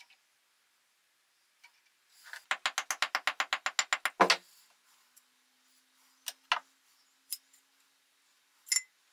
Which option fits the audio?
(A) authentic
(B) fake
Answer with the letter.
A